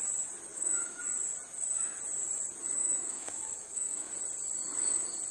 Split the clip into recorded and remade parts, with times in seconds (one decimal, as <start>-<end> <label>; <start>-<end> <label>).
0.0-0.5 recorded; 0.5-1.0 remade; 1.0-2.8 recorded; 2.8-4.1 remade; 4.1-5.3 recorded